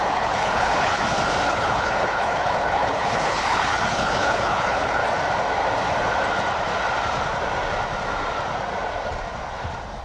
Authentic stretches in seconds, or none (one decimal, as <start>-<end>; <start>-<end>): 1.0-1.5; 5.0-10.0